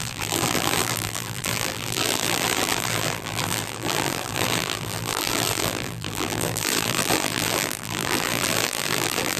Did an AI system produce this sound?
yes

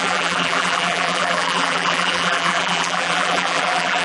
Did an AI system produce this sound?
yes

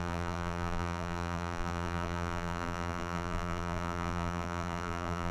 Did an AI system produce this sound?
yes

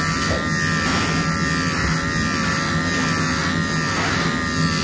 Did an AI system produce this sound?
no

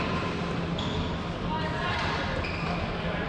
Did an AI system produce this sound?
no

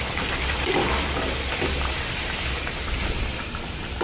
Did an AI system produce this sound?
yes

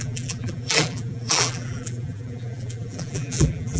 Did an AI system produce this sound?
yes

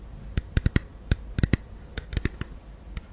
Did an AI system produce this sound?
no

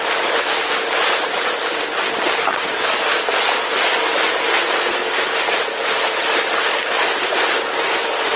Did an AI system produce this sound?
no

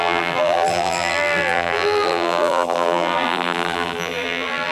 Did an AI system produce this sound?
yes